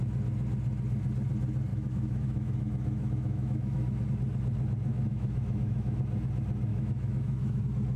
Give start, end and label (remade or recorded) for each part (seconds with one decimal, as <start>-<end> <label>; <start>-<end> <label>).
0.0-1.7 recorded; 1.7-4.0 remade; 4.0-4.9 recorded; 4.9-6.0 remade; 6.0-6.7 recorded; 6.7-7.6 remade; 7.6-8.0 recorded